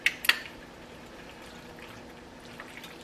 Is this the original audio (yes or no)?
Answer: yes